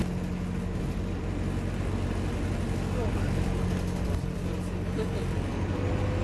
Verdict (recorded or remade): recorded